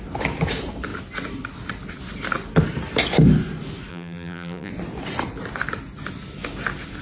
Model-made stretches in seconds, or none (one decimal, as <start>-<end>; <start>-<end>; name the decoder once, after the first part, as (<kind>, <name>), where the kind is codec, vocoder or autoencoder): 3.9-4.7 (vocoder, BigVGAN v2)